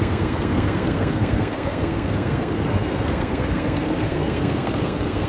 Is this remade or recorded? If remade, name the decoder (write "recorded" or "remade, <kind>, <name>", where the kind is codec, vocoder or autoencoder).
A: remade, codec, SNAC